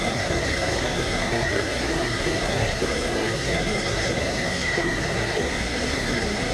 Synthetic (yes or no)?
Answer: yes